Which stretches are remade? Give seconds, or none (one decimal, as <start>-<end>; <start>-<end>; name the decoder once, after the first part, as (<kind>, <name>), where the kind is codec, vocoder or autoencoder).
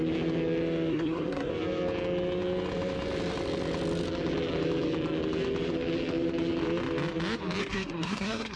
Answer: 0.9-1.5 (codec, SNAC); 7.6-8.6